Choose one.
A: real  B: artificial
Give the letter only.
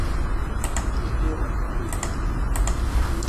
A